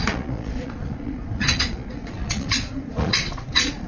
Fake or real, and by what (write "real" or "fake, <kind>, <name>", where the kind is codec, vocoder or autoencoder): fake, vocoder, Vocos